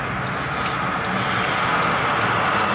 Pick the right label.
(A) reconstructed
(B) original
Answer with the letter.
B